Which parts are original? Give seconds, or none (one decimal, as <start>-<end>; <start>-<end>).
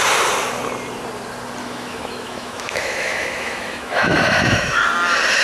0.0-1.6; 4.8-5.4